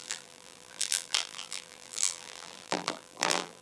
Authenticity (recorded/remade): remade